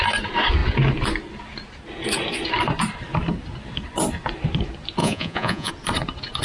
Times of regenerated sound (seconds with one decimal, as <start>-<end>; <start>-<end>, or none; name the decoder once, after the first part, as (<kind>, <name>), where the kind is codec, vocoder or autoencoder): 5.0-5.7 (vocoder, Vocos)